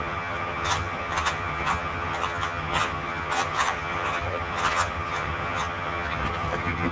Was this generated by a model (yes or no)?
yes